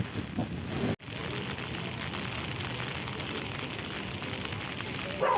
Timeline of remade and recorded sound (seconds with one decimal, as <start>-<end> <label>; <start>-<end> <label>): 0.0-5.4 recorded